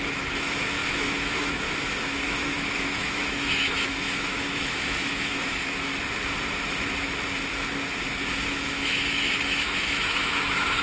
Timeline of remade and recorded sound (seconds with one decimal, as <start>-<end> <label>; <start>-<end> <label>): 0.0-5.9 remade; 5.9-8.5 recorded; 8.5-10.8 remade